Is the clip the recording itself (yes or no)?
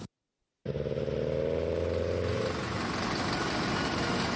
yes